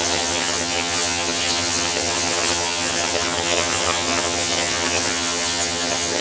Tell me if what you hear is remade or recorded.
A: remade